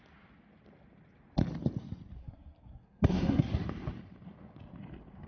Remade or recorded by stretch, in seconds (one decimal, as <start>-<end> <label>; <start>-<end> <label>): 0.0-2.2 recorded; 2.2-3.5 remade; 3.5-5.3 recorded